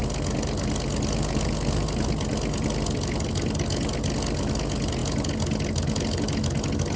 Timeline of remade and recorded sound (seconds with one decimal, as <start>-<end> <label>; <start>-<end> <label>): 0.0-7.0 recorded